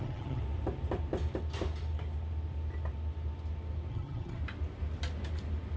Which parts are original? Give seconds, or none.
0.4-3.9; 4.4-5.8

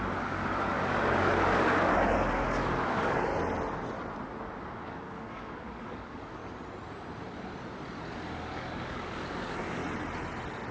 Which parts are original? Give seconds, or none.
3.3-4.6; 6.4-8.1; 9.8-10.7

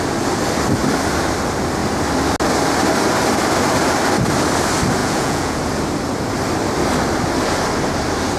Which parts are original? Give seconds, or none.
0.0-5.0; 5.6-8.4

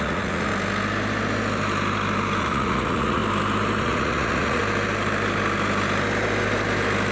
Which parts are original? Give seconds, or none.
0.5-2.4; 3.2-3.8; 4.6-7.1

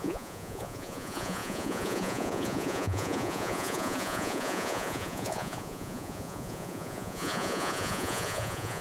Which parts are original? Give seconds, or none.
none

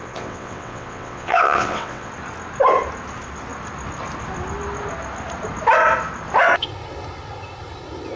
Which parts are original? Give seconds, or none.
2.1-8.2